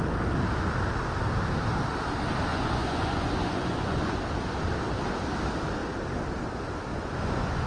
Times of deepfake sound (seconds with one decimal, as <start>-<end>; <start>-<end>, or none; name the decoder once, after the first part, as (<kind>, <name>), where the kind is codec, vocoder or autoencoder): 2.5-4.2 (vocoder, Vocos); 6.9-7.7